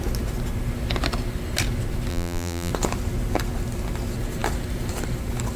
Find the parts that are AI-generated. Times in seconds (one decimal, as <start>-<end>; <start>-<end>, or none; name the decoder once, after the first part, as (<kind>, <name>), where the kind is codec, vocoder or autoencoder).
2.1-2.7 (vocoder, BigVGAN v2)